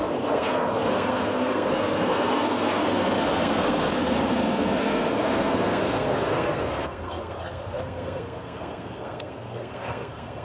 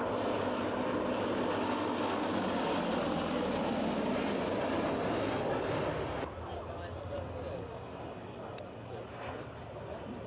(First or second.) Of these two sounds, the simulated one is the first